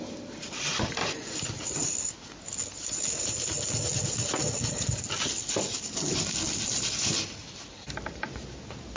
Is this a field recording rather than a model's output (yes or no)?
yes